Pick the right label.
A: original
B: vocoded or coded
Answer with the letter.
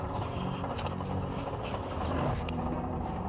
B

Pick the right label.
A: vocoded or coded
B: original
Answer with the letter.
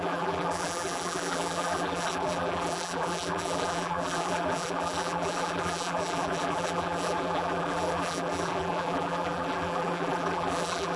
A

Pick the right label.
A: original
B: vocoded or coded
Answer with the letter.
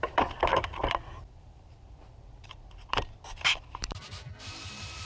B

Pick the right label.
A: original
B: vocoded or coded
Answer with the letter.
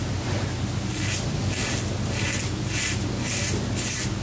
A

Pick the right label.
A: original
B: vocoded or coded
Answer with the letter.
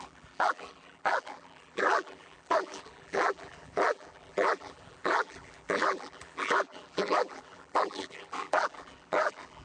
B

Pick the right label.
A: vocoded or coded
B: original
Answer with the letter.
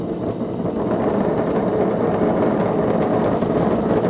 B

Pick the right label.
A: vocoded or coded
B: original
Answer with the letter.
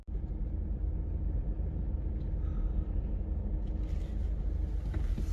B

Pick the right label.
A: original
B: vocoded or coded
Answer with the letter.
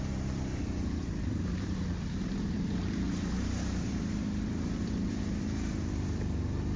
B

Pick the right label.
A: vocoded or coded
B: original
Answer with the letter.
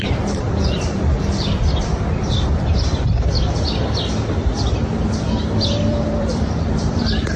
A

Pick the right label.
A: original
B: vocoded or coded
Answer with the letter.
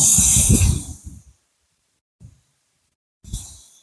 B